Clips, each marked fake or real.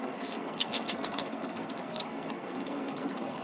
fake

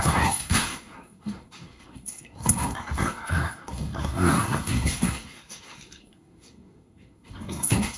fake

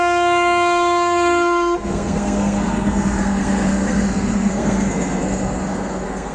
fake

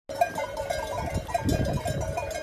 real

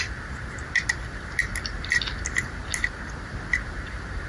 real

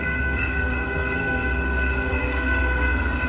fake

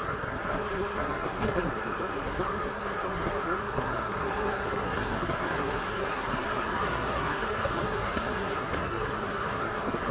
fake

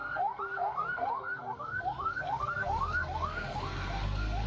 fake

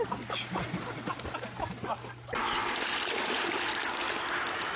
real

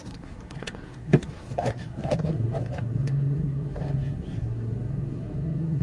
fake